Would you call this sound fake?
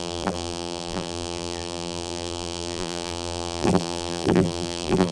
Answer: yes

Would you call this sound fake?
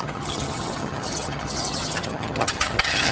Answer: yes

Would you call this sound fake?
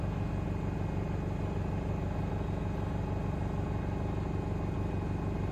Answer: no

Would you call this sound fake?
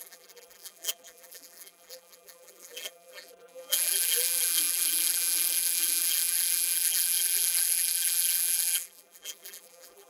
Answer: yes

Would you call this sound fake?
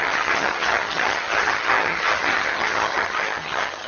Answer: yes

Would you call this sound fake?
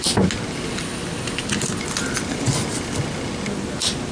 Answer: no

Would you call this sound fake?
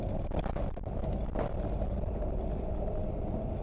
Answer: yes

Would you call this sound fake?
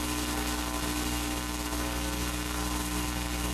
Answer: yes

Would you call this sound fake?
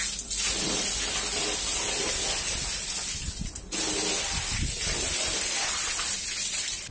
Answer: no